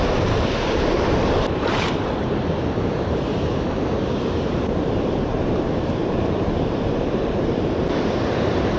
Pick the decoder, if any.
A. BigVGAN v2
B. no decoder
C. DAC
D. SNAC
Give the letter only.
A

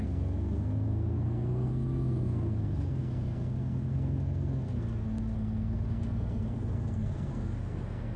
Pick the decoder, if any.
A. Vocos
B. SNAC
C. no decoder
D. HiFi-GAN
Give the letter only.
B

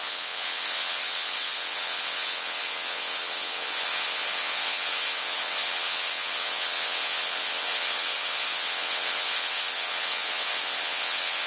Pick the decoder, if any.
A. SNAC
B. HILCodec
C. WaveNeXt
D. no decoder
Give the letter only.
C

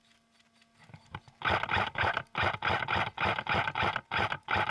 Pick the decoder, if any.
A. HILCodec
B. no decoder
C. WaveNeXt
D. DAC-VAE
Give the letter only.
B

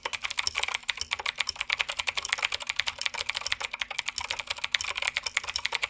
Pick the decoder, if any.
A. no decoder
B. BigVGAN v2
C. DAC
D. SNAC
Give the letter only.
A